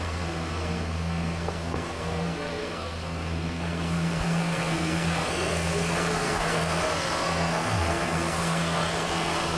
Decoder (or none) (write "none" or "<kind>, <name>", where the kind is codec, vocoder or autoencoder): codec, SNAC